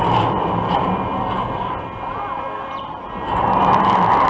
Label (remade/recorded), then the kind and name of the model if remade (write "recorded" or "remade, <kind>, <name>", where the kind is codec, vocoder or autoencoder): remade, vocoder, BigVGAN v2